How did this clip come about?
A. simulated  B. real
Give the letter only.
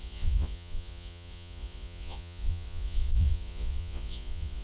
A